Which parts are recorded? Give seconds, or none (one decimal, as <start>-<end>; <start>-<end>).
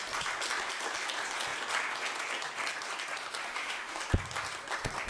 0.0-3.4; 4.0-5.1